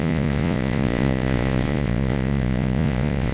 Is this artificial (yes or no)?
yes